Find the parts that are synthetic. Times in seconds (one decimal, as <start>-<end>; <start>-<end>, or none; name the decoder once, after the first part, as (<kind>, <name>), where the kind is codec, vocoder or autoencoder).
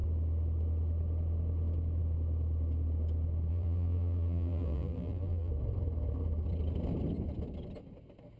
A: 3.5-5.5 (vocoder, BigVGAN v2)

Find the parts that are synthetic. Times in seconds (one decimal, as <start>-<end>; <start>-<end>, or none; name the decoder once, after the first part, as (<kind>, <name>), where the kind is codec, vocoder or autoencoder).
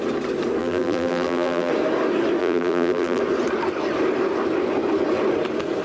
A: 0.6-1.7 (vocoder, BigVGAN v2); 2.4-3.2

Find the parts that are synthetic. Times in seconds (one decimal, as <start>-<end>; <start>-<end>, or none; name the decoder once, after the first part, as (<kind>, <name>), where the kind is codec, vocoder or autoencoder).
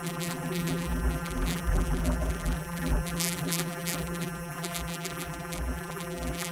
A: 0.0-6.5 (vocoder, BigVGAN v2)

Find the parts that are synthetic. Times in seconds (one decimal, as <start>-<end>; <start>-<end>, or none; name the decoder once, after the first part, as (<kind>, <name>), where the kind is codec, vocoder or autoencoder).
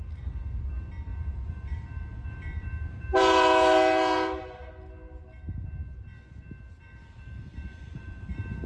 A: 1.1-4.7 (vocoder, BigVGAN v2); 7.7-8.7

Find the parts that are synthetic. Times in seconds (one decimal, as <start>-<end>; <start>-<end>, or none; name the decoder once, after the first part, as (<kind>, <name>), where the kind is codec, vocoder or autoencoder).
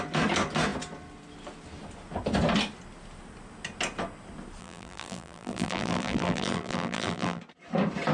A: 4.6-7.4 (vocoder, BigVGAN v2)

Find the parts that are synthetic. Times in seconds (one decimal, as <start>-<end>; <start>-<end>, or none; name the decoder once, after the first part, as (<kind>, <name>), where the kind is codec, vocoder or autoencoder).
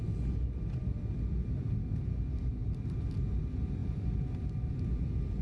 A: 0.8-1.6 (vocoder, BigVGAN v2); 2.6-3.4; 3.8-4.5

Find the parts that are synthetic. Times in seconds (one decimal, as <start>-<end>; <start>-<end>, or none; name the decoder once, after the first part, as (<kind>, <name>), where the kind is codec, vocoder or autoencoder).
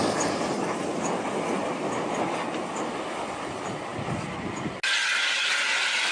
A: 3.9-4.4 (vocoder, BigVGAN v2); 5.0-5.5